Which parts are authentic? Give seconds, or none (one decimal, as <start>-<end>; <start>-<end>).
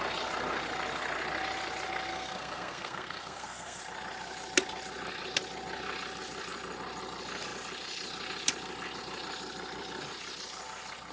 0.0-2.1; 3.8-11.1